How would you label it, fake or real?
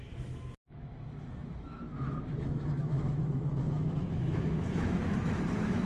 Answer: fake